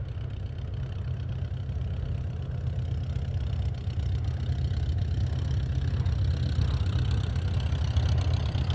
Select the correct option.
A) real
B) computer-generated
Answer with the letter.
A